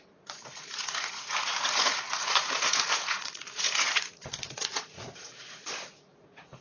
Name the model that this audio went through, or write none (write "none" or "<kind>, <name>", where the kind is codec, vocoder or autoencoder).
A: vocoder, Vocos